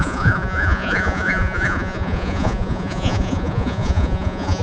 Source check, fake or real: fake